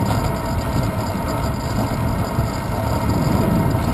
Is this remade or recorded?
recorded